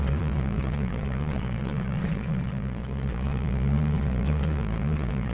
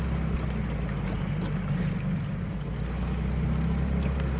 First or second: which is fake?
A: first